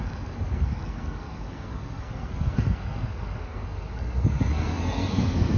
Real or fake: fake